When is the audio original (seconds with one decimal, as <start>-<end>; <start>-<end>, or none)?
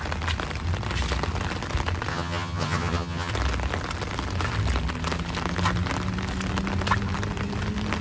0.0-2.1; 3.3-8.0